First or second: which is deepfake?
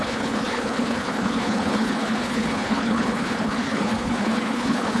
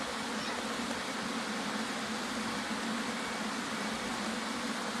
first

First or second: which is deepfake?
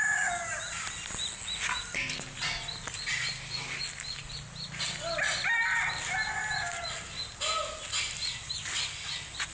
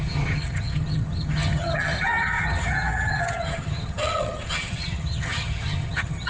second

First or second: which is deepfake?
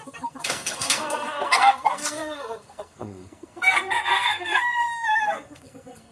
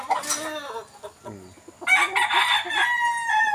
first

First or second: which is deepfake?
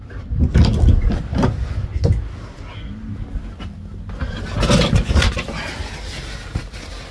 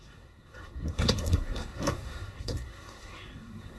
second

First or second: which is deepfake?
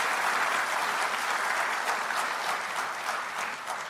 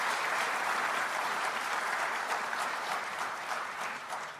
second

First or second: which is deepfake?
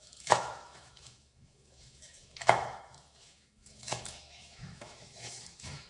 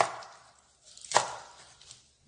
first